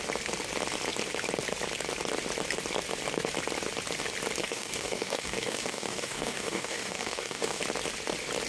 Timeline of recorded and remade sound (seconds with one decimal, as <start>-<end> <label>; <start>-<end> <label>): 0.0-4.4 recorded; 4.4-7.6 remade; 7.6-8.5 recorded